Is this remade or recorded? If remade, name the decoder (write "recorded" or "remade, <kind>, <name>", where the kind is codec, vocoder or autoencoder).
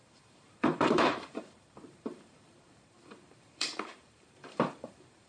remade, vocoder, BigVGAN v2